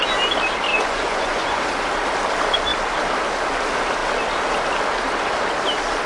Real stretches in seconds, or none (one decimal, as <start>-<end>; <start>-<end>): 0.0-0.7; 1.6-6.1